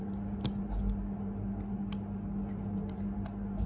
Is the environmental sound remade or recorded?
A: recorded